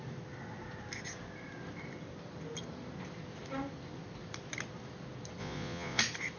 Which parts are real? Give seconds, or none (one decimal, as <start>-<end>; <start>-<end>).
0.0-5.4; 6.0-6.4